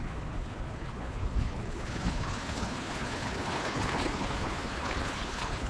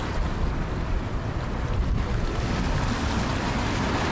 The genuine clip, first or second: second